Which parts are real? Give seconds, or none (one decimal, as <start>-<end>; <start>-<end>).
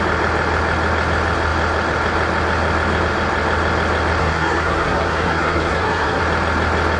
0.0-4.2; 6.2-7.0